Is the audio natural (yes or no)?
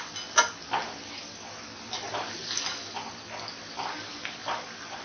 yes